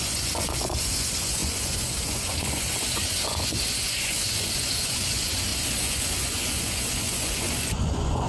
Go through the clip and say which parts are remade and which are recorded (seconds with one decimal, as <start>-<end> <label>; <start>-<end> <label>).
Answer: 0.0-8.3 remade